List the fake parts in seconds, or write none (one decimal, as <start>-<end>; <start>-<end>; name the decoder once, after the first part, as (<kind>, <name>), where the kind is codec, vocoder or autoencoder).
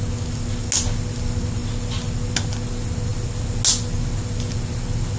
none